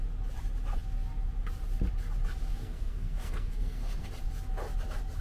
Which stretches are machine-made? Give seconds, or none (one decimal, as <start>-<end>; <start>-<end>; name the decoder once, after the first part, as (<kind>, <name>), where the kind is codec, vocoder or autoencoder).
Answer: 2.5-4.1 (codec, SNAC)